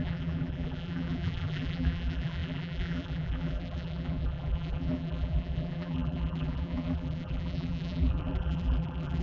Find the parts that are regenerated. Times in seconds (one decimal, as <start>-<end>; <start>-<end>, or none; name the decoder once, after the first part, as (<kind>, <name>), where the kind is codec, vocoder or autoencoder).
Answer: 0.0-9.2 (vocoder, BigVGAN v2)